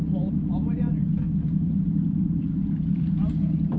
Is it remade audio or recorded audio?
remade